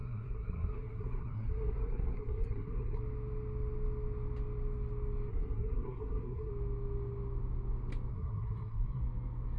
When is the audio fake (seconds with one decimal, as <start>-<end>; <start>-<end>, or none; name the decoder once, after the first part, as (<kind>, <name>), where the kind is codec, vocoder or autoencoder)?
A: 0.0-3.0 (codec, SNAC); 5.3-6.5; 8.1-9.0